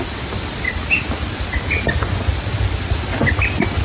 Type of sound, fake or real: real